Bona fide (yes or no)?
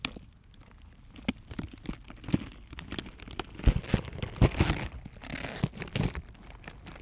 yes